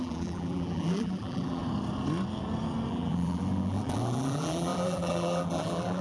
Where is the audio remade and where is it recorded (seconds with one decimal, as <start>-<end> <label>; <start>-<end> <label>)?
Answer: 0.0-1.6 remade; 1.6-2.9 recorded; 2.9-6.0 remade